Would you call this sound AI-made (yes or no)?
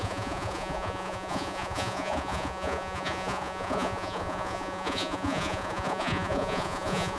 yes